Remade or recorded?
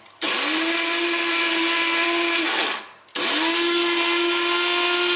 recorded